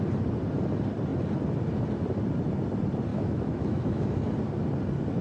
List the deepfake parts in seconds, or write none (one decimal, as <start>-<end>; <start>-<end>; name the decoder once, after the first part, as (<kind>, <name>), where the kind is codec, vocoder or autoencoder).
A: 3.1-4.2 (autoencoder, DAC-VAE)